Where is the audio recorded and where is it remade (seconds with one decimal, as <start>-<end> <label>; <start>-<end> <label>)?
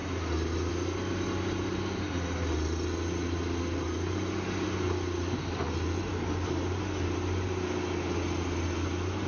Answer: 0.0-9.3 recorded